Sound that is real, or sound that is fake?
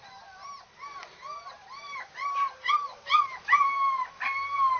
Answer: real